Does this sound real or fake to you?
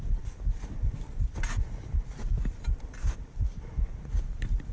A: real